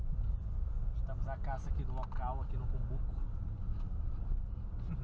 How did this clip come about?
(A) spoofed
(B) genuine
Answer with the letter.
B